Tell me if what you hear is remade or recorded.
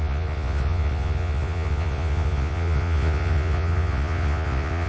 remade